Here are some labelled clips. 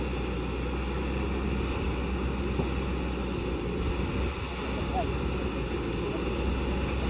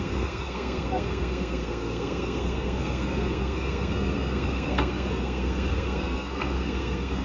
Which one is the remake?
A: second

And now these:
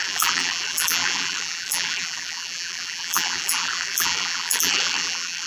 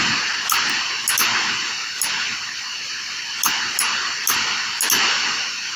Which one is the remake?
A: first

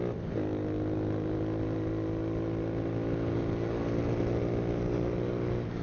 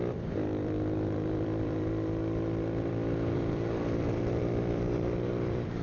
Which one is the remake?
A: second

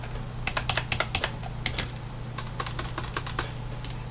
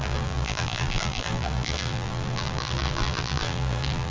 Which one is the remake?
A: second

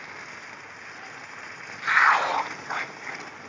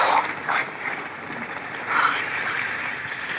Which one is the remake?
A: second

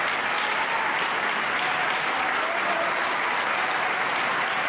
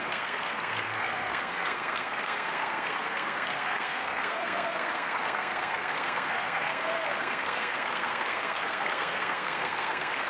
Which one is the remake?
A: second